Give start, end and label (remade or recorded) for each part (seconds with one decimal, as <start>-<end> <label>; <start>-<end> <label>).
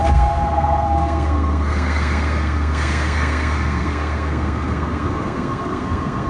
0.0-6.3 remade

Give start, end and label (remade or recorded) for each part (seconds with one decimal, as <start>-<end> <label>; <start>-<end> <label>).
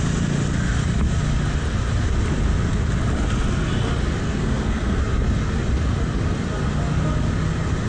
0.0-4.4 recorded; 4.4-5.0 remade; 5.0-7.9 recorded